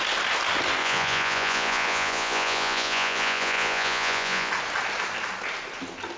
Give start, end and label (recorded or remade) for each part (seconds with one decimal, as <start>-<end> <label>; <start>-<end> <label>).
0.0-0.8 recorded; 0.8-4.5 remade; 4.5-6.2 recorded